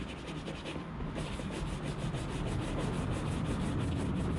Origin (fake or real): real